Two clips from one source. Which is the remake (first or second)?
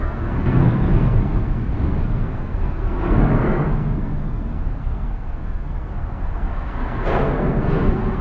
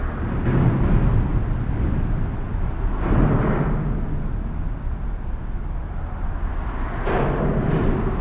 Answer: first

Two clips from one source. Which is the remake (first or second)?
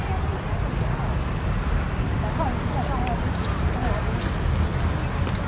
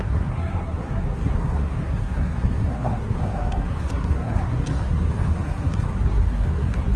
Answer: second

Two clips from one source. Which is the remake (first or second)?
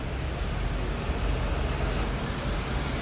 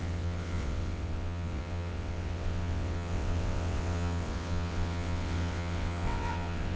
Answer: second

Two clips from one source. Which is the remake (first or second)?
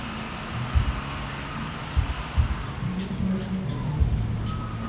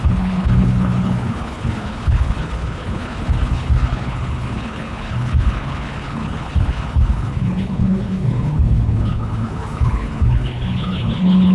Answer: second